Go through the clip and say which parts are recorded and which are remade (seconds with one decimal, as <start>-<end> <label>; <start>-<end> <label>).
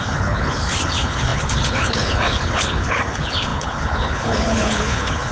0.0-5.3 remade